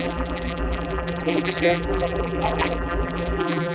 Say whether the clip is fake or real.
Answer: fake